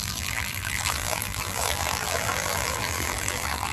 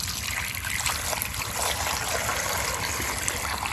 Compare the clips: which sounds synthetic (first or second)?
first